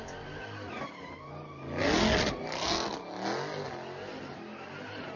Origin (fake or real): real